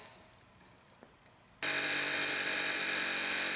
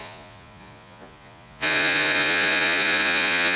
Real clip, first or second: first